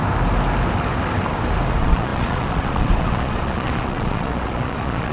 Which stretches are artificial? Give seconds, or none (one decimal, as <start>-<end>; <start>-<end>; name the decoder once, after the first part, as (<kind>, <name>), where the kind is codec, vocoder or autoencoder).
1.7-5.1 (vocoder, Vocos)